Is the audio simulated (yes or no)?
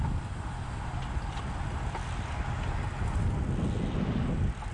no